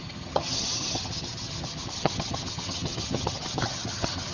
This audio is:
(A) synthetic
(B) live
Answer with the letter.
A